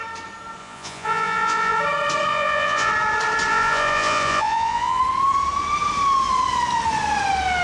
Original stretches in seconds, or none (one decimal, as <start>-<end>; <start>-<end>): 0.0-0.6; 1.8-2.3; 2.9-3.5; 5.0-7.6